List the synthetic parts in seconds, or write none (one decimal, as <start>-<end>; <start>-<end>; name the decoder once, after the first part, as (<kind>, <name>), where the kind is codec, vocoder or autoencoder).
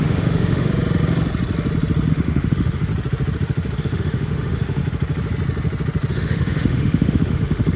0.0-0.7 (autoencoder, DAC-VAE); 2.1-2.9; 3.8-4.8; 6.1-7.8